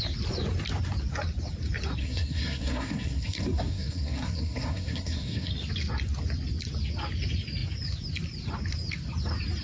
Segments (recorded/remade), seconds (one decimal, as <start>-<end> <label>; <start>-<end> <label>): 0.0-2.0 recorded; 2.0-5.5 remade; 5.5-9.6 recorded